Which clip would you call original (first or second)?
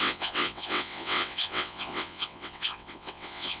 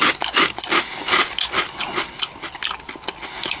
second